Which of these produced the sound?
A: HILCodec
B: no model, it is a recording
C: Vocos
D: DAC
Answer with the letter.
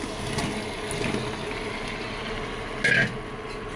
B